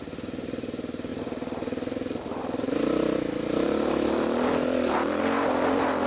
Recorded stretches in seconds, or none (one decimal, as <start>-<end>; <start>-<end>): 0.0-6.1